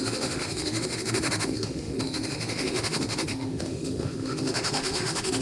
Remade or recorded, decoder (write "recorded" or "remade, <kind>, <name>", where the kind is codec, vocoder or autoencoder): remade, autoencoder, DAC-VAE